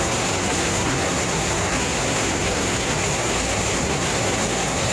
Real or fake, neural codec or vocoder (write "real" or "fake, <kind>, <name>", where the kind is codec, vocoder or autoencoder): fake, codec, SNAC